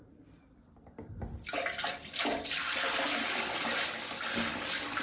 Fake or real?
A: fake